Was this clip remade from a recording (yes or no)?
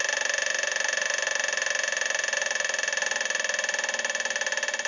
no